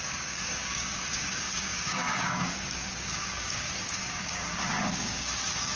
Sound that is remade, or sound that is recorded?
remade